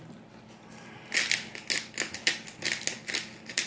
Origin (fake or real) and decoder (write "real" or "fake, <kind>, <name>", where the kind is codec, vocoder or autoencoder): real